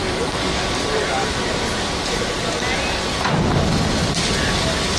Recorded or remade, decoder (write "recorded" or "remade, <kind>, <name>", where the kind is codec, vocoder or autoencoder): recorded